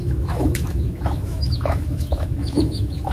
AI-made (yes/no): yes